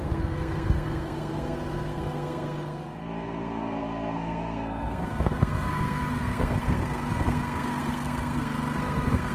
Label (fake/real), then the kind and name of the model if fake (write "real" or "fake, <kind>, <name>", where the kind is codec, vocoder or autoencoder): fake, codec, SNAC